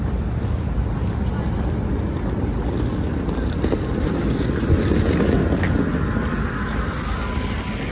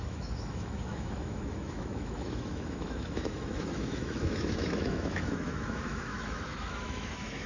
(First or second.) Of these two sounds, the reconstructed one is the second